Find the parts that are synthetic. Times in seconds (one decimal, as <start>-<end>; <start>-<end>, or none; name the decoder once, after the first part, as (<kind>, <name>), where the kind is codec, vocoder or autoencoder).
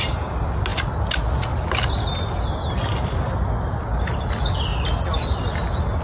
none